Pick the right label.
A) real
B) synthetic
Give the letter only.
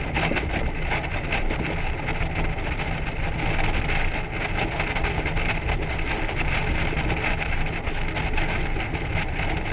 A